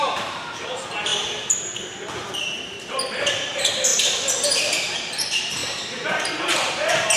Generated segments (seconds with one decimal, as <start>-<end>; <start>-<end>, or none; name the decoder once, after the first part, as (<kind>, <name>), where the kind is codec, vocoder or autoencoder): 0.0-1.1 (vocoder, BigVGAN v2); 2.1-3.9; 4.6-7.2